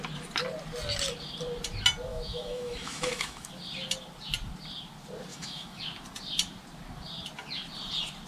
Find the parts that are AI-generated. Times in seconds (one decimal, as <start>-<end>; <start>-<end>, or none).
2.1-3.5; 5.3-5.8